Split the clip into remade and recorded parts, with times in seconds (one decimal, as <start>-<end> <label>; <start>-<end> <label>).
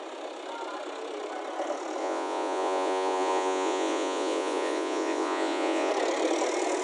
0.0-2.0 recorded; 2.0-5.9 remade; 5.9-6.8 recorded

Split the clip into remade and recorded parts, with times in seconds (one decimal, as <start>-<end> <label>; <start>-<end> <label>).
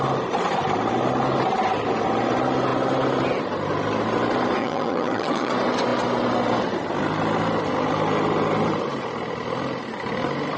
0.0-4.6 recorded; 4.6-5.5 remade; 5.5-10.6 recorded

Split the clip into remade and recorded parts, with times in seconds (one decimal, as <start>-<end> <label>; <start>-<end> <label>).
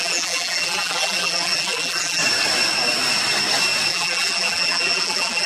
0.0-2.2 remade; 2.2-3.9 recorded; 3.9-5.5 remade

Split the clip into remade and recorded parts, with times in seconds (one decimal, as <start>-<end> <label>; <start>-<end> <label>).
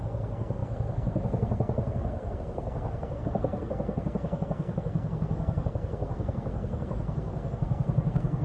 0.0-8.4 remade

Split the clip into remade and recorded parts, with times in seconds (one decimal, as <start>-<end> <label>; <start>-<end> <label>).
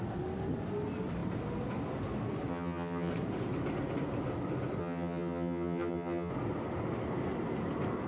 0.0-2.5 recorded; 2.5-3.1 remade; 3.1-4.8 recorded; 4.8-6.3 remade; 6.3-8.1 recorded